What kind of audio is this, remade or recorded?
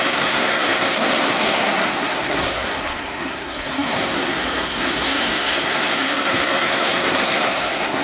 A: remade